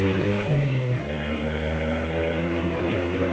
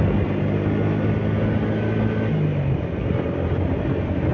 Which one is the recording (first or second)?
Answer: second